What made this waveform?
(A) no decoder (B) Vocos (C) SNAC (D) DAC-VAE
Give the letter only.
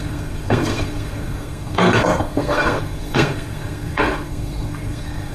C